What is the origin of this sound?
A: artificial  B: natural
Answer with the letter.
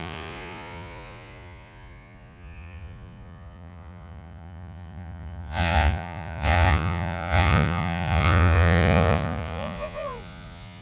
A